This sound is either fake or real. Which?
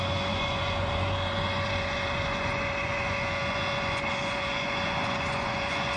fake